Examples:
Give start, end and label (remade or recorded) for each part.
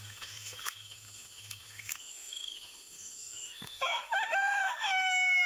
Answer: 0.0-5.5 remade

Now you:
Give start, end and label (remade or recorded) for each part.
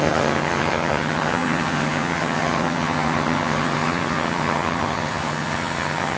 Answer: 0.0-6.2 remade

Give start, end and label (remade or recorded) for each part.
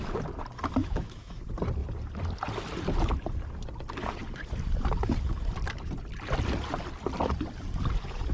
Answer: 0.0-0.8 recorded; 0.8-1.4 remade; 1.4-8.3 recorded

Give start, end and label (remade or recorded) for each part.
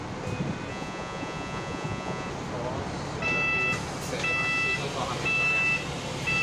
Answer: 0.0-0.7 recorded; 0.7-2.3 remade; 2.3-6.4 recorded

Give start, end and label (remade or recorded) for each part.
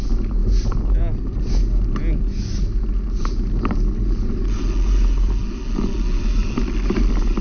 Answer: 0.0-7.4 recorded